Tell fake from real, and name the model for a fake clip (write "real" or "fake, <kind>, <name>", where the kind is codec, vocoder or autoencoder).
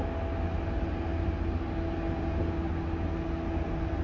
real